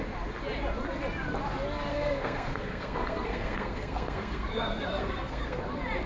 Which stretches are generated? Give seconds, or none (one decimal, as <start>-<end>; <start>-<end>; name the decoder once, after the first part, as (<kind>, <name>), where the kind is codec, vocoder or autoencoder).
1.9-5.6 (codec, SNAC)